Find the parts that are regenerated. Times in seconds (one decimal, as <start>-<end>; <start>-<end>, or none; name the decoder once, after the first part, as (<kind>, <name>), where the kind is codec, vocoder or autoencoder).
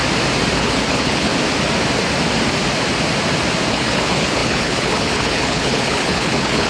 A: 0.6-1.3 (codec, HILCodec); 3.7-6.7